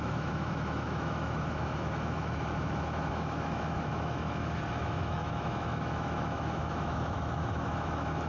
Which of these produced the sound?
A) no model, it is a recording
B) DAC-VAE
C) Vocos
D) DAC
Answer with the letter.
B